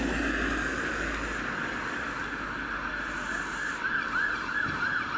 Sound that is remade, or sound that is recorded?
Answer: recorded